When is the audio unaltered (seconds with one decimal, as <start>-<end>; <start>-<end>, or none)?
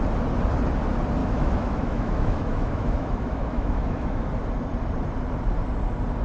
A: 0.0-1.2; 4.3-6.2